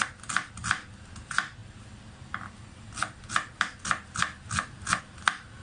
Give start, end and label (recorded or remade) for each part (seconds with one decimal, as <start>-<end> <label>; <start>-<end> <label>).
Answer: 0.0-1.6 remade; 1.6-5.0 recorded; 5.0-5.6 remade